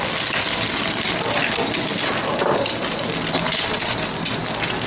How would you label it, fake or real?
real